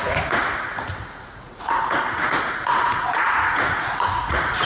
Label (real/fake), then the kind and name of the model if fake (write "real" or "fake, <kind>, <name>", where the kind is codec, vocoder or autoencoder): fake, vocoder, Vocos